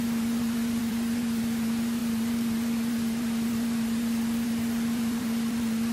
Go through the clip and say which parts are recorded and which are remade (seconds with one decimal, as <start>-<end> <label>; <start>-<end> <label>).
0.0-5.9 remade